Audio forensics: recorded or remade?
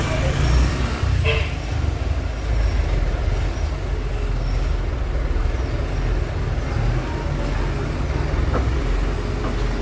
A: recorded